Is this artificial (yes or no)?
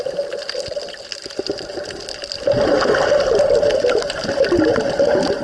no